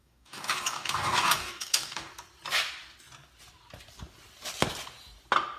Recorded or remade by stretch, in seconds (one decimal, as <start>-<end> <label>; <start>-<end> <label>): 0.0-2.1 remade; 2.1-5.6 recorded